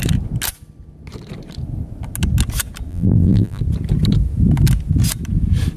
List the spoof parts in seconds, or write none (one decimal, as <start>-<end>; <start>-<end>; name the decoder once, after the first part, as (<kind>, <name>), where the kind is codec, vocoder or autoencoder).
2.9-3.6 (vocoder, BigVGAN v2)